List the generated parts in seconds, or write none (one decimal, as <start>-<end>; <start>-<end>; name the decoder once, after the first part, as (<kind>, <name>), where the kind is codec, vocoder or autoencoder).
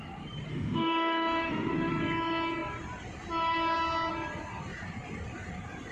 0.5-1.9 (autoencoder, DAC-VAE)